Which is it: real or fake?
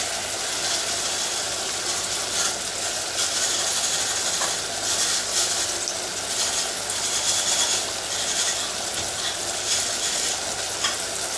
real